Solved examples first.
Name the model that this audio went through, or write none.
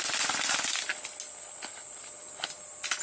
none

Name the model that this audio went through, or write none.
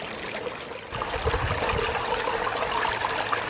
none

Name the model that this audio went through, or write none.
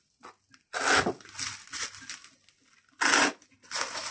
none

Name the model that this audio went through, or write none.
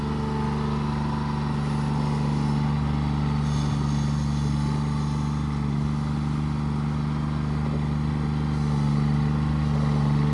none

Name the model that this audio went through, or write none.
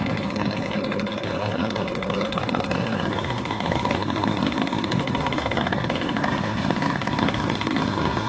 codec, SNAC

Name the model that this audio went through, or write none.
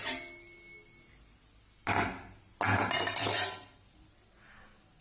none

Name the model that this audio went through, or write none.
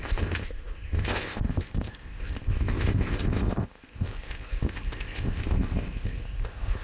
codec, ZipCodec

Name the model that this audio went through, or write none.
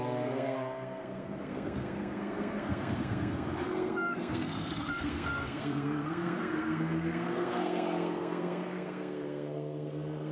codec, SNAC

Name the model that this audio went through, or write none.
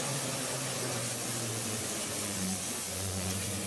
vocoder, Vocos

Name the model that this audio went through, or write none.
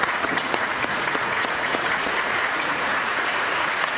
vocoder, Vocos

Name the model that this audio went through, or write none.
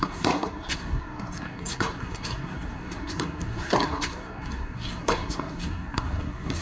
codec, SNAC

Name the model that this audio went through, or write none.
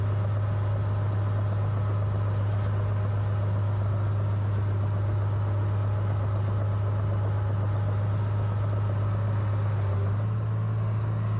none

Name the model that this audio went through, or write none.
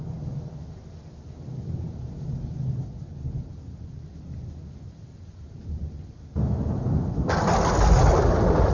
none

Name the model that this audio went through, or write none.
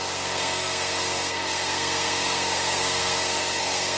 codec, SNAC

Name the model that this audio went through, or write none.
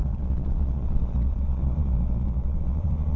vocoder, Vocos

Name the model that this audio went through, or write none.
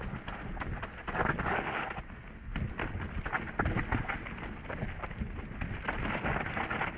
none